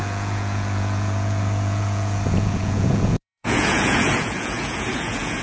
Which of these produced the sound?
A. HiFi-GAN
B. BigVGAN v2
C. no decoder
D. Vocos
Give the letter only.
D